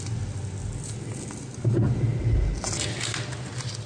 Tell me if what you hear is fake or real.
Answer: real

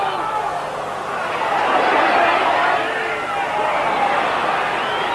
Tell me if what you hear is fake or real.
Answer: real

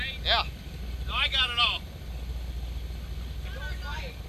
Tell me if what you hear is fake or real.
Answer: real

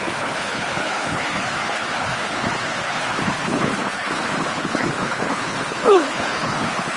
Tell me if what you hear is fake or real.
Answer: fake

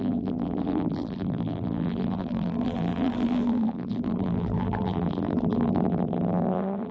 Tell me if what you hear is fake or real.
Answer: fake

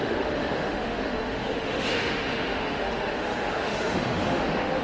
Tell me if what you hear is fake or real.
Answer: fake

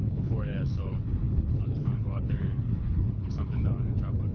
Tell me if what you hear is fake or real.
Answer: fake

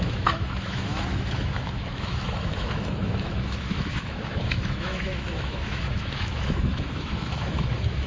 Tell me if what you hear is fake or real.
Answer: fake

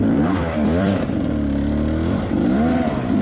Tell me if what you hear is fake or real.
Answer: fake